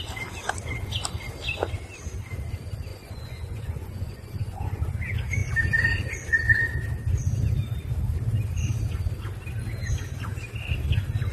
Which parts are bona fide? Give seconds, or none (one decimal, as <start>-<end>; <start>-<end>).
0.0-2.9; 4.8-11.3